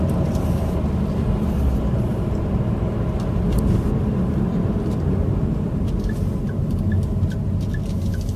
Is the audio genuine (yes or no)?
yes